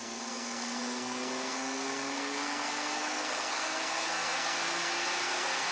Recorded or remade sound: remade